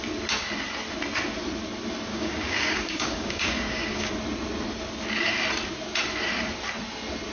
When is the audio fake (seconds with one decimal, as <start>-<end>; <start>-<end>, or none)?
2.1-4.1